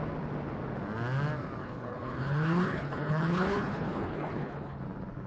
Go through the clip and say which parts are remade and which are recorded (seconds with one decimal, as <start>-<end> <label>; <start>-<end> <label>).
0.0-1.6 recorded; 1.6-4.8 remade; 4.8-5.3 recorded